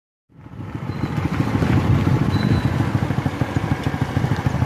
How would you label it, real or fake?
fake